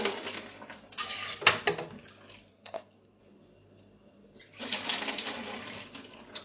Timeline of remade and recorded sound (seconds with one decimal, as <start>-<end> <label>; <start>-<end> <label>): 0.0-2.5 recorded; 2.5-3.2 remade; 3.2-6.4 recorded